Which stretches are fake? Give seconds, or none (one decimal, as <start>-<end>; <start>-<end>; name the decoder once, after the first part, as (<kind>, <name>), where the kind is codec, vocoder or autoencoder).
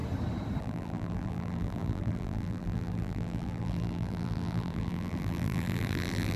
0.6-6.4 (vocoder, BigVGAN v2)